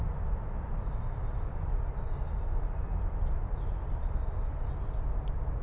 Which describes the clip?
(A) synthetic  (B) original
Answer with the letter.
B